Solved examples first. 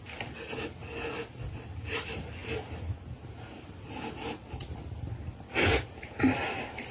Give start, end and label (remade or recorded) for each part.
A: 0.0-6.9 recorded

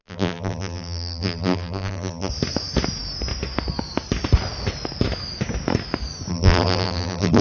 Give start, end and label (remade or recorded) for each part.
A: 0.0-2.3 remade; 2.3-6.3 recorded; 6.3-7.4 remade

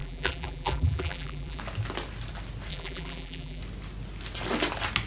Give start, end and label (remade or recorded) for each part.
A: 0.0-1.6 remade; 1.6-2.7 recorded; 2.7-3.6 remade; 3.6-5.1 recorded

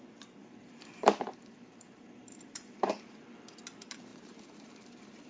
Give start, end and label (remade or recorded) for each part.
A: 0.0-0.4 recorded; 0.4-3.2 remade; 3.2-4.1 recorded; 4.1-5.3 remade

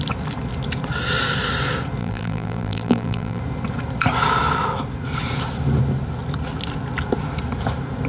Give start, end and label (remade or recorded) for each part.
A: 0.0-2.0 recorded; 2.0-3.4 remade; 3.4-8.1 recorded

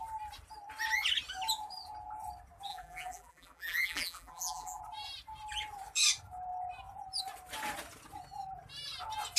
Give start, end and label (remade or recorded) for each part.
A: 0.0-2.7 recorded; 2.7-4.8 remade; 4.8-9.4 recorded

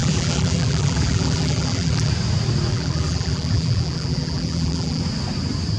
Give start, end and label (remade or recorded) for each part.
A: 0.0-2.1 remade; 2.1-2.7 recorded; 2.7-5.0 remade; 5.0-5.8 recorded